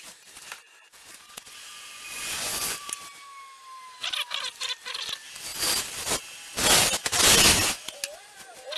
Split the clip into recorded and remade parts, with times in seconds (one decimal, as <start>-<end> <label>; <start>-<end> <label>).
0.0-0.6 recorded; 0.6-2.9 remade; 2.9-8.8 recorded